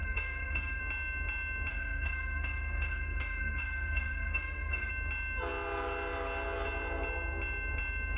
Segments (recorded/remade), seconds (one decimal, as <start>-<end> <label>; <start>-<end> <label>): 0.0-0.8 remade; 0.8-1.7 recorded; 1.7-4.9 remade; 4.9-8.2 recorded